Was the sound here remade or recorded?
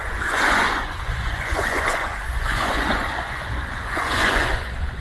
remade